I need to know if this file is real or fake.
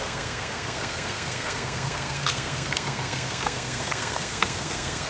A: fake